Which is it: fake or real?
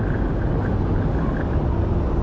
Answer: real